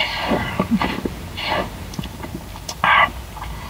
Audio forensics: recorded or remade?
recorded